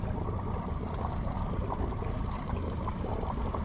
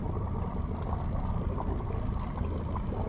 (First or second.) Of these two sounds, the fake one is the first